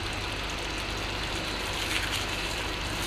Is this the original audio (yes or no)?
yes